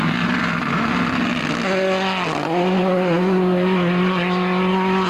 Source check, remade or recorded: recorded